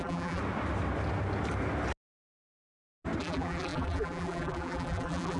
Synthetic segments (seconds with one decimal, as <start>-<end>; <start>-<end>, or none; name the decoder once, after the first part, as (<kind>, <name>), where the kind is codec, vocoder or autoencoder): 0.0-0.4 (vocoder, BigVGAN v2); 3.2-5.4